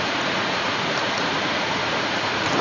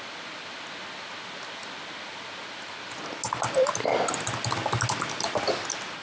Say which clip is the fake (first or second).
first